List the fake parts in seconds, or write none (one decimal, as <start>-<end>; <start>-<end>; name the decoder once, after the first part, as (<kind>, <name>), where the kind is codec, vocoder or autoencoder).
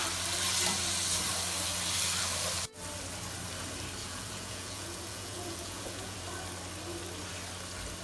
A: 4.0-6.2 (vocoder, Vocos)